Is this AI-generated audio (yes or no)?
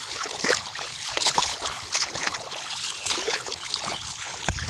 yes